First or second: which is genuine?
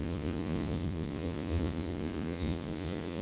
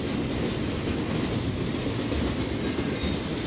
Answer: second